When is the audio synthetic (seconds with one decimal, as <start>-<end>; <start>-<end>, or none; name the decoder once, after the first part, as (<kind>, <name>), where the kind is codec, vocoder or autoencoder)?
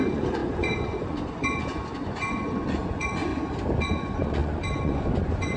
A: 0.0-3.3 (vocoder, Vocos); 3.8-5.6